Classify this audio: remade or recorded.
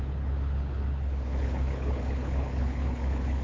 remade